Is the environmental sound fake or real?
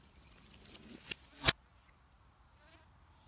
real